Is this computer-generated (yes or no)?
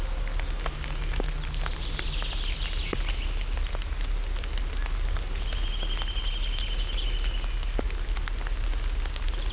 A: no